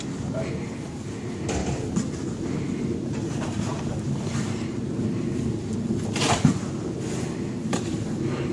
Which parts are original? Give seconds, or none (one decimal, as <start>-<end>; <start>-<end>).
0.0-8.5